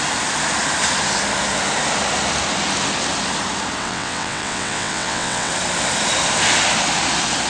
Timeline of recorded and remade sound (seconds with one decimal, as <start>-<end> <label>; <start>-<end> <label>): 0.0-3.8 recorded; 3.8-5.5 remade; 5.5-7.5 recorded